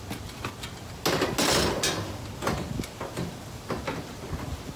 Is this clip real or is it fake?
real